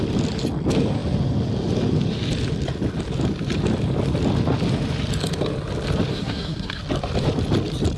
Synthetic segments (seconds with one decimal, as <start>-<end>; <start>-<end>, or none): 6.1-6.8